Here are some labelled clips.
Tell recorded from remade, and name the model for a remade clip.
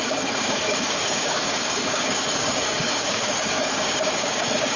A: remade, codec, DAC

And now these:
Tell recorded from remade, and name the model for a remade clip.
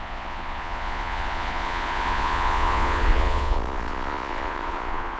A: remade, vocoder, Vocos